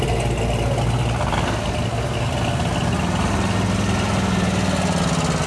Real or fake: real